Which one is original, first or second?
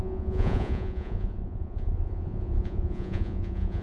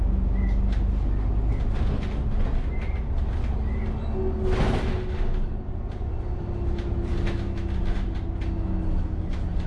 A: second